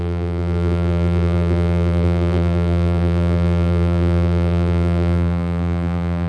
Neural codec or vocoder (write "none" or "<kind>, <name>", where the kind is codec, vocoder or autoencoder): vocoder, BigVGAN v2